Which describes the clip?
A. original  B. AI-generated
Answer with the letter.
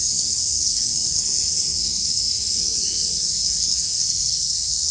B